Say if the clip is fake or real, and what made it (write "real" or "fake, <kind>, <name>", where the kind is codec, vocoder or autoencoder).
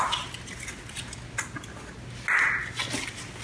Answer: real